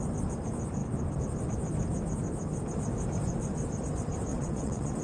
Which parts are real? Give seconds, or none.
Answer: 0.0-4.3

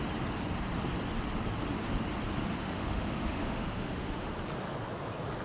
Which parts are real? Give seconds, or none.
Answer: 0.0-2.6; 4.3-5.4

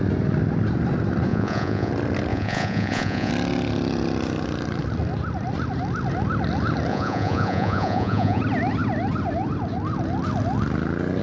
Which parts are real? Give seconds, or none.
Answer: 0.0-1.3; 1.9-2.3; 3.3-6.9; 8.4-11.2